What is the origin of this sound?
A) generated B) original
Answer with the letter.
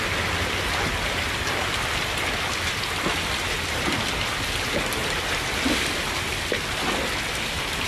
B